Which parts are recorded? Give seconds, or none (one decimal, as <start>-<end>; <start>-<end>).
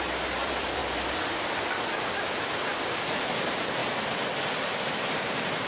0.8-1.4; 2.7-3.4